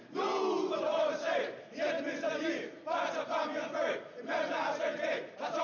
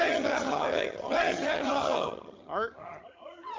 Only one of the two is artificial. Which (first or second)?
second